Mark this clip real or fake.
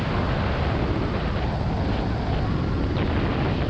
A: real